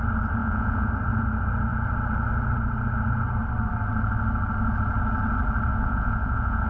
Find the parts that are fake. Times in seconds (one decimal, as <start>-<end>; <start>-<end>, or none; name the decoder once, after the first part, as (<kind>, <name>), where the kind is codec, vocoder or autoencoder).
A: 0.4-0.9 (vocoder, Vocos); 5.7-6.7